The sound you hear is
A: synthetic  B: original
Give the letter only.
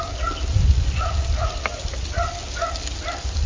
B